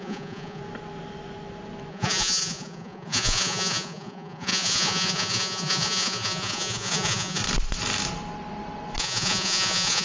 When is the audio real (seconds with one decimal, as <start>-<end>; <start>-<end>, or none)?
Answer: 0.6-1.9; 7.4-9.0

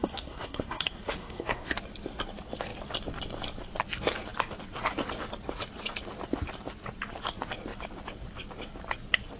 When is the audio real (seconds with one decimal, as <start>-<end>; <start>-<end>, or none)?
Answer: 1.7-9.4